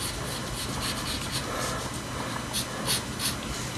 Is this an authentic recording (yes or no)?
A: yes